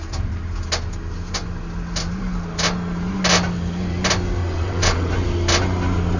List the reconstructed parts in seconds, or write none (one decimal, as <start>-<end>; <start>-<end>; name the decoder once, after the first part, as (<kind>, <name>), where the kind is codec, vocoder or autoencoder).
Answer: 4.4-5.1 (vocoder, WaveNeXt)